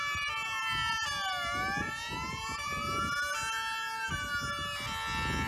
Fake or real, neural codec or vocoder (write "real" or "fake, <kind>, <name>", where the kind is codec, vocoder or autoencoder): real